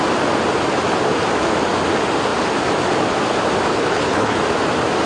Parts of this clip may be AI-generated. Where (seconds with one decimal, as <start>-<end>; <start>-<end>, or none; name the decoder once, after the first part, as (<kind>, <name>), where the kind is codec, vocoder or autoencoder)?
3.7-4.4 (codec, HILCodec)